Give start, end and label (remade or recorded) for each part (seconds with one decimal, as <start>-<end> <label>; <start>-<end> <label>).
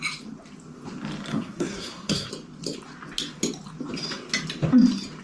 0.0-1.3 recorded; 1.3-2.3 remade; 2.3-5.2 recorded